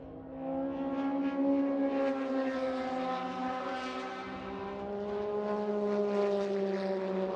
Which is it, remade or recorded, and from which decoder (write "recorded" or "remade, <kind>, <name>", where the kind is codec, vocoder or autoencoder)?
recorded